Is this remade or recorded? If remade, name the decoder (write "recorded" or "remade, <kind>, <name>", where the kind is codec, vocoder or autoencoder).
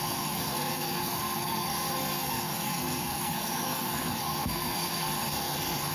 remade, codec, SNAC